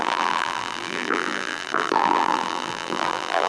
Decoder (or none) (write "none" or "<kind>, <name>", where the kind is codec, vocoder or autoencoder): vocoder, BigVGAN v2